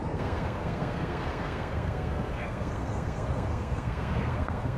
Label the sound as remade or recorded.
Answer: remade